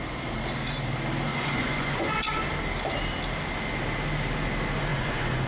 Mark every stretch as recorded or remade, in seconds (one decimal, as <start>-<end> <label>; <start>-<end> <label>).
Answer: 0.0-1.3 recorded; 1.3-2.4 remade; 2.4-4.9 recorded; 4.9-5.5 remade